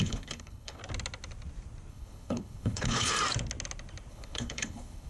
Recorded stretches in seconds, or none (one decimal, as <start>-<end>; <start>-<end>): 0.8-1.9; 3.1-4.1